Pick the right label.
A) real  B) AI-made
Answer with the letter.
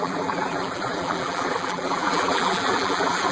B